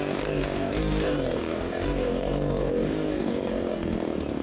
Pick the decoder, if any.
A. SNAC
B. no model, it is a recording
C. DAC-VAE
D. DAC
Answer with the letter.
D